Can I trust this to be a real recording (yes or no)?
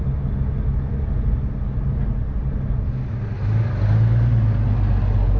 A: yes